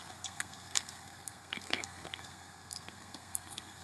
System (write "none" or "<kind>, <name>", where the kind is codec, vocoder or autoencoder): codec, SNAC